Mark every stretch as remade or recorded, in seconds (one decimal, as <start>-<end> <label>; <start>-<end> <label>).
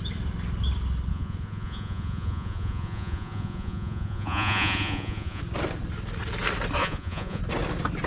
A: 0.0-1.1 recorded; 1.1-5.4 remade; 5.4-6.8 recorded; 6.8-7.4 remade; 7.4-8.1 recorded